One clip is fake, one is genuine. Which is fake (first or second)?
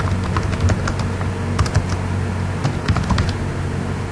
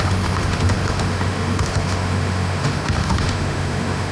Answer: second